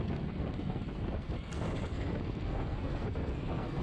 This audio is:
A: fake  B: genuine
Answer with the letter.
A